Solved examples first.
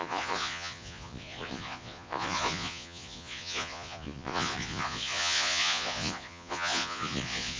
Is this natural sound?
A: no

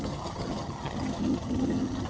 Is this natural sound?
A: no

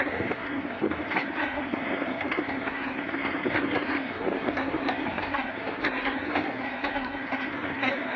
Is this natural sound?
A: no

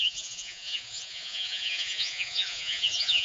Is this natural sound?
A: no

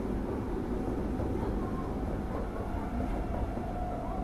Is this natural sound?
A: yes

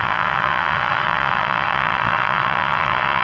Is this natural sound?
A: no